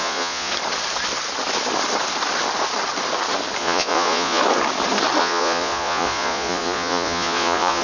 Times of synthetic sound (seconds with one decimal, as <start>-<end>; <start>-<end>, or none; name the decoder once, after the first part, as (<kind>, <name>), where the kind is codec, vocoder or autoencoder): 0.0-0.5 (vocoder, Vocos); 3.6-4.4; 5.2-7.8